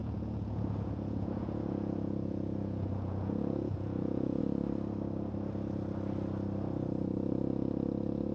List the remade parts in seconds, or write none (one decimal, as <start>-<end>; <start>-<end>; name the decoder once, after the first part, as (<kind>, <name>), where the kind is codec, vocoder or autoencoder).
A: 0.0-4.4 (vocoder, Vocos)